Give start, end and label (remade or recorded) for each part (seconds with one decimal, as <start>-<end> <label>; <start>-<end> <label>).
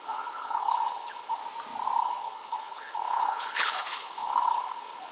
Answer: 0.0-1.4 remade; 1.4-2.0 recorded; 2.0-5.1 remade